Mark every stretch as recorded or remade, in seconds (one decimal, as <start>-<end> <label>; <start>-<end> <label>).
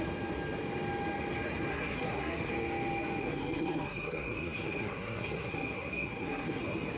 0.0-1.7 recorded; 1.7-2.5 remade; 2.5-3.2 recorded; 3.2-6.6 remade; 6.6-7.0 recorded